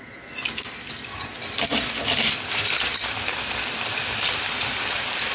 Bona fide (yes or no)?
yes